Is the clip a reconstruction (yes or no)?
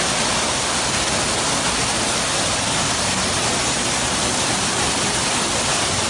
no